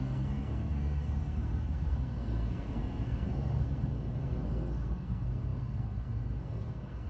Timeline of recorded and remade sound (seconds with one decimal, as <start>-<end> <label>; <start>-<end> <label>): 0.0-7.1 remade